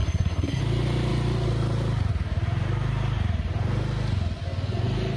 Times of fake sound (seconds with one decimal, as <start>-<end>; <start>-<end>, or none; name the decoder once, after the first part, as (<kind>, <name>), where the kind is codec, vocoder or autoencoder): 0.0-0.6 (codec, SNAC)